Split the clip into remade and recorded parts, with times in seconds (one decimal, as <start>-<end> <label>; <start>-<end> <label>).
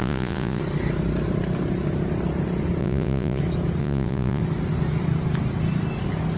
0.0-0.6 remade; 0.6-2.8 recorded; 2.8-3.4 remade; 3.4-3.8 recorded; 3.8-4.4 remade; 4.4-6.4 recorded